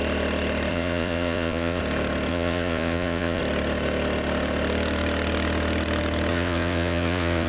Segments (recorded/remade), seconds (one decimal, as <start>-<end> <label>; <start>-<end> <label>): 0.0-0.7 recorded; 0.7-1.8 remade; 1.8-2.3 recorded; 2.3-3.4 remade; 3.4-6.3 recorded; 6.3-7.5 remade